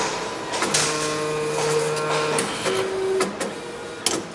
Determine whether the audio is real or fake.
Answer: real